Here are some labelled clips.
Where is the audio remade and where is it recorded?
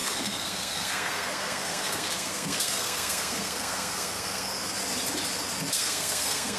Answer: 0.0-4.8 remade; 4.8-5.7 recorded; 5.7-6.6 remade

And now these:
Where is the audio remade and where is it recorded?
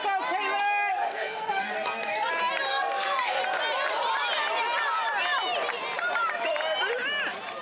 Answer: 0.0-0.9 recorded; 0.9-2.3 remade; 2.3-2.7 recorded; 2.7-3.4 remade; 3.4-7.6 recorded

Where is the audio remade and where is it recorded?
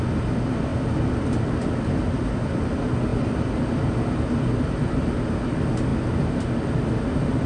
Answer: 0.0-7.5 recorded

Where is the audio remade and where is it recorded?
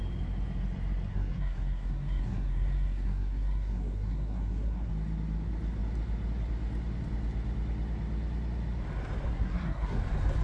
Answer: 0.0-1.1 recorded; 1.1-4.9 remade; 4.9-9.3 recorded; 9.3-10.0 remade; 10.0-10.4 recorded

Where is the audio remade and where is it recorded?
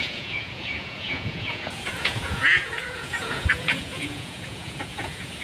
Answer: 0.0-5.4 remade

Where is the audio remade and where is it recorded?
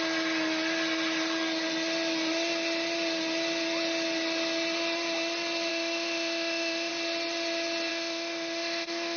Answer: 0.0-5.7 recorded; 5.7-6.9 remade; 6.9-7.9 recorded; 7.9-9.2 remade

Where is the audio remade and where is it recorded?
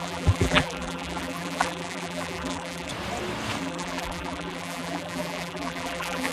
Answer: 0.0-2.9 remade; 2.9-3.6 recorded; 3.6-6.3 remade